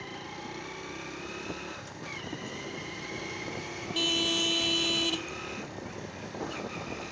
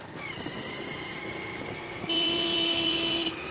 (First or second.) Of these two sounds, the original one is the first